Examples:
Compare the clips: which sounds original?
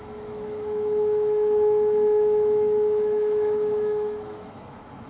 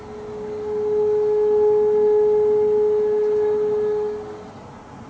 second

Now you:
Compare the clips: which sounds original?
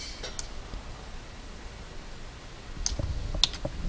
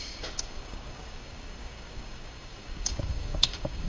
first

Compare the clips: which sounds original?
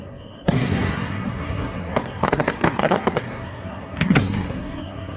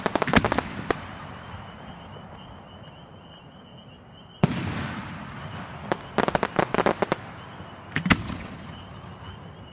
second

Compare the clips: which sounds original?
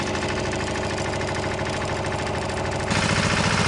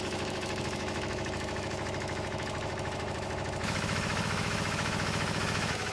first